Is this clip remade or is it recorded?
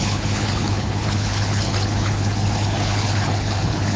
remade